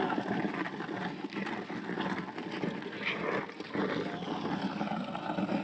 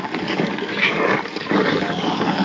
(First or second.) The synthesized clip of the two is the second